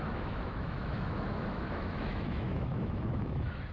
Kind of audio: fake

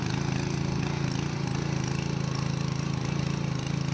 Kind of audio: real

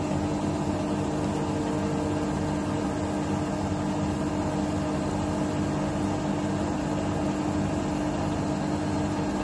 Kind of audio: real